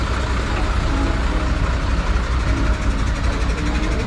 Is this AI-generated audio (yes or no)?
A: no